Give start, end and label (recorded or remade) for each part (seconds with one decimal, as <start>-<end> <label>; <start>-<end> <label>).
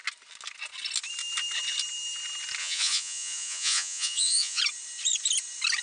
0.0-2.6 recorded; 2.6-4.6 remade; 4.6-5.8 recorded